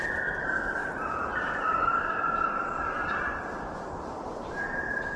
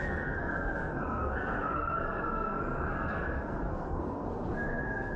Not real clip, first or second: second